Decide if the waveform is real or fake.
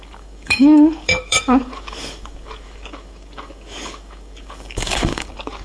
fake